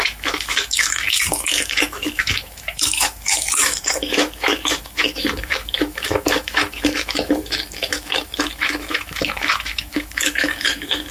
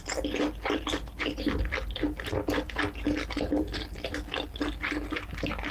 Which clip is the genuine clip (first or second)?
second